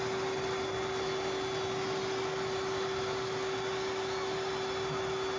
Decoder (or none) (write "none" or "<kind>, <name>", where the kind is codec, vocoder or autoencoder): none